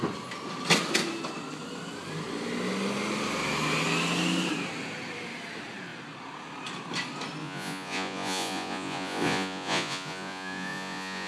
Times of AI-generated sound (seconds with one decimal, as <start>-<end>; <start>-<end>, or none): 7.4-11.3